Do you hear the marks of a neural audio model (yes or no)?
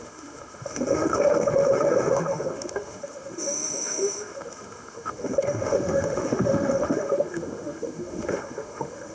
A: yes